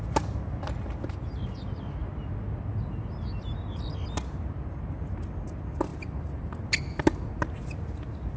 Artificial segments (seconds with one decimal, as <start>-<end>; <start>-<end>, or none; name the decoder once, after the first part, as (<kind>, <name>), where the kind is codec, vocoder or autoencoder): none